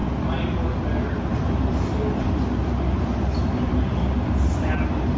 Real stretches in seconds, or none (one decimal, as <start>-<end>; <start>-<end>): 0.0-1.3; 2.4-3.4; 4.5-5.2